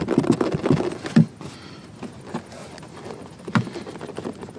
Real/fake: real